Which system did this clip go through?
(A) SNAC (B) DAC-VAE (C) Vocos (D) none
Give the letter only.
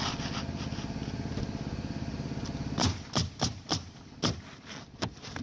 D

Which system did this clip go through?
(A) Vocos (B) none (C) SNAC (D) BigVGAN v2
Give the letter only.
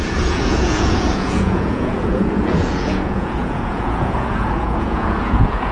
A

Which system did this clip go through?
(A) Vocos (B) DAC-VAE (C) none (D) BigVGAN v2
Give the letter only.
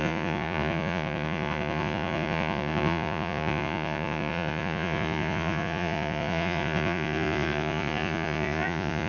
A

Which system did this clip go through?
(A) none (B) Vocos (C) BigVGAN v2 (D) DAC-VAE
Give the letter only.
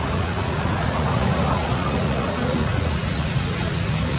B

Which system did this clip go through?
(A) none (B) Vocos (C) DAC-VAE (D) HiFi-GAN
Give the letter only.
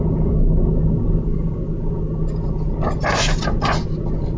A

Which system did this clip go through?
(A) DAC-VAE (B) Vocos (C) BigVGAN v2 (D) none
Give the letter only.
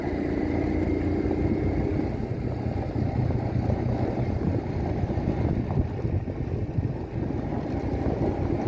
D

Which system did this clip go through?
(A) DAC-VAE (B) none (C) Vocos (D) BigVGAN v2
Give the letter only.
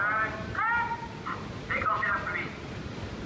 B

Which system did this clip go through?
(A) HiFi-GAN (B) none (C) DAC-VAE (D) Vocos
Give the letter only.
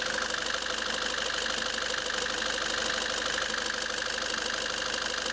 B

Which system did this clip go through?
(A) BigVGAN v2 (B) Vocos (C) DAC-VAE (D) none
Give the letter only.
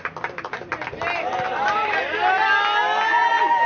D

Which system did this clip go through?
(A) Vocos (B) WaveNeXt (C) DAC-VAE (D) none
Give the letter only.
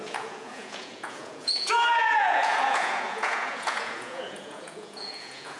A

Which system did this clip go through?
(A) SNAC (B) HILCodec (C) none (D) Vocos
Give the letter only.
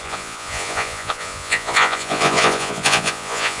D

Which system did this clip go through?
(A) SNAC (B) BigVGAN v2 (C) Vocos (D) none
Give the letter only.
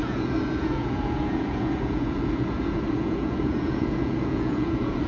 C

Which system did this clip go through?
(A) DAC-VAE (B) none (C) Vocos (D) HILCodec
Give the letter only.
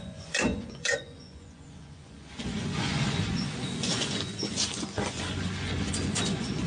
C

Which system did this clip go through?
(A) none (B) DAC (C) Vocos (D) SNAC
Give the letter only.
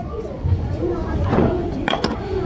C